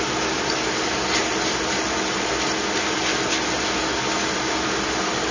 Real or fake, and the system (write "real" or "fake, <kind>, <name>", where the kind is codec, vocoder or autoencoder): real